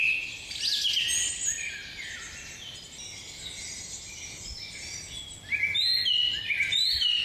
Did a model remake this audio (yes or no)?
no